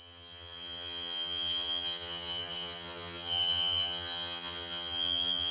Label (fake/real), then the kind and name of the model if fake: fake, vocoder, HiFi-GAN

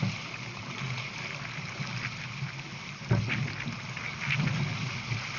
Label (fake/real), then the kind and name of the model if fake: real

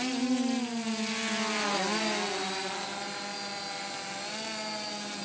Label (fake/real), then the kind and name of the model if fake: real